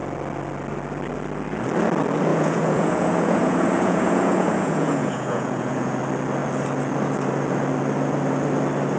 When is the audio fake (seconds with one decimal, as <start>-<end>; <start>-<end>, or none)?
2.3-6.0